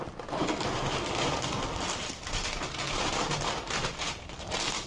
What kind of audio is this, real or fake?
real